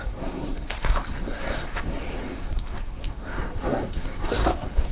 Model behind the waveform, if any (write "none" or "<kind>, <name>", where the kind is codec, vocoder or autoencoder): codec, SNAC